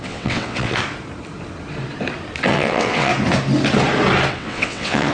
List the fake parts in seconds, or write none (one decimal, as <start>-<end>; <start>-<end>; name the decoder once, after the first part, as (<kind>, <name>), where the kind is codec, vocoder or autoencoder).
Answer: 0.0-0.8 (vocoder, WaveNeXt); 2.5-3.1; 4.3-5.1